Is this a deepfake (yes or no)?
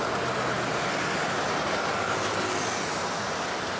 no